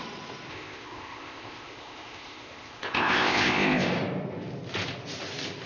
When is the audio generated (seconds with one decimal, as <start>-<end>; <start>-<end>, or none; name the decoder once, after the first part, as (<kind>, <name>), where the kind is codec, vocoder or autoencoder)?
0.5-3.9 (codec, ZipCodec)